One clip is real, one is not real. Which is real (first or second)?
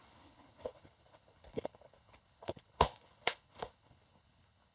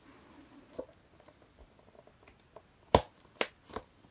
second